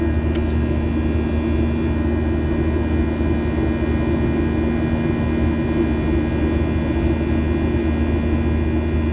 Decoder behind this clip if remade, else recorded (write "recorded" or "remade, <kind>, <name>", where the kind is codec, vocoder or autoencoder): recorded